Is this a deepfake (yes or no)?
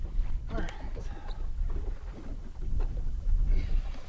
no